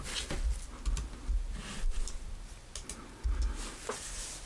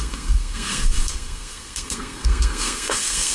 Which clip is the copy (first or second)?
second